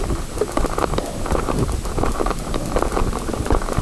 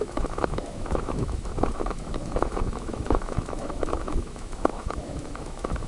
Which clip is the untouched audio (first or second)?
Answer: first